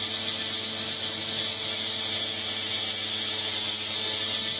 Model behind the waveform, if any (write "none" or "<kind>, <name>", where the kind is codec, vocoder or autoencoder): none